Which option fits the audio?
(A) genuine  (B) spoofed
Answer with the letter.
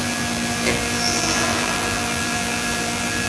B